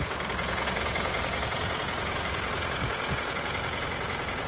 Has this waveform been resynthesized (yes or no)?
yes